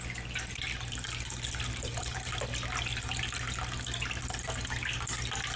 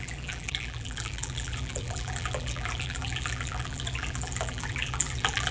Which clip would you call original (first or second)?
first